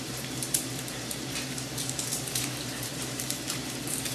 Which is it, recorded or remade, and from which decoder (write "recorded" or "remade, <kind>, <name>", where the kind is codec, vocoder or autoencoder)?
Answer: remade, vocoder, BigVGAN v2